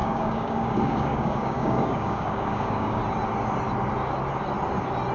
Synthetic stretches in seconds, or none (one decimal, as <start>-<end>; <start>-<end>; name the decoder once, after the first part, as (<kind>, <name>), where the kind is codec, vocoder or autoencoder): 0.0-3.0 (codec, DAC)